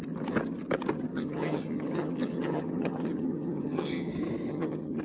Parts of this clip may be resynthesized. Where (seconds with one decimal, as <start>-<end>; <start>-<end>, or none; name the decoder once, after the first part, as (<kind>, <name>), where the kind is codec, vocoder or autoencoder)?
1.1-4.1 (vocoder, HiFi-GAN); 4.5-5.0